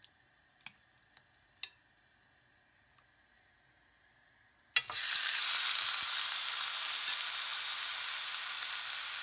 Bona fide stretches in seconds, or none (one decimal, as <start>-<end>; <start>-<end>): 0.0-9.2